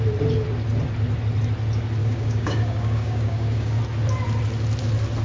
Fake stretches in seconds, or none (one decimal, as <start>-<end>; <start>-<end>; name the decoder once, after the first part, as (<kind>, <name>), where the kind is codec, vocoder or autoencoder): 2.0-3.8 (codec, DAC)